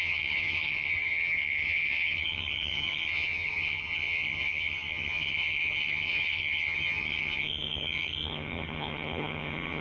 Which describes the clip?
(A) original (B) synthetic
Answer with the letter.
B